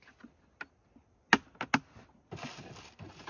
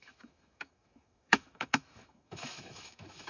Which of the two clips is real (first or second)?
first